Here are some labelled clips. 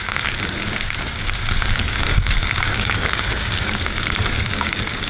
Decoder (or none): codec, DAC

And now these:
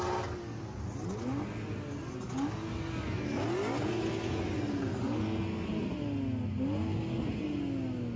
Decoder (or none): none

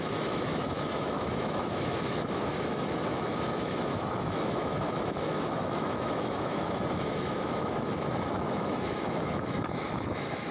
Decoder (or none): autoencoder, DAC-VAE